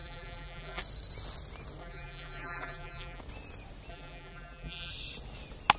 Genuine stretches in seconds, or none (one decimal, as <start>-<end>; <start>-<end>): 0.8-1.8; 3.2-3.9; 4.9-5.8